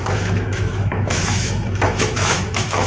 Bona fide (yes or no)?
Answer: no